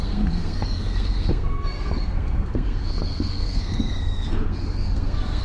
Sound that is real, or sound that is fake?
fake